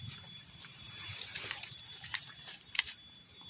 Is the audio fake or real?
fake